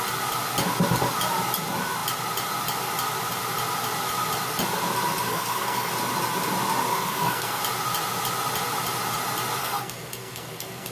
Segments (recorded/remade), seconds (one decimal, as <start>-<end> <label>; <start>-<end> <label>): 0.0-5.3 recorded; 5.3-5.9 remade; 5.9-6.9 recorded; 6.9-7.6 remade; 7.6-9.6 recorded; 9.6-10.9 remade